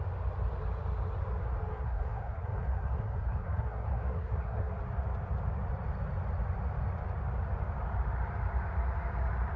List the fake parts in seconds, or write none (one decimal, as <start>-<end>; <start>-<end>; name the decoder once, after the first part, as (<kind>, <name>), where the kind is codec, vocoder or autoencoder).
1.7-4.7 (codec, SNAC)